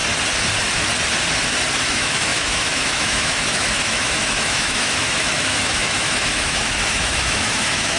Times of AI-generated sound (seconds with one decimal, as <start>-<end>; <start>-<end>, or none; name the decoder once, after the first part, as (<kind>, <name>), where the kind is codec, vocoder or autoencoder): 1.8-8.0 (autoencoder, DAC-VAE)